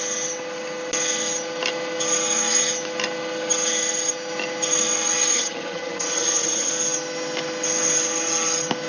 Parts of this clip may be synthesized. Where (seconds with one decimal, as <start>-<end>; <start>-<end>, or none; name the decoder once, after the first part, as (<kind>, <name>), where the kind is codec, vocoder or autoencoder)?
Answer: 5.3-6.7 (vocoder, HiFi-GAN)